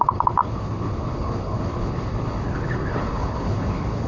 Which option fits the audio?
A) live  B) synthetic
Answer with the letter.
B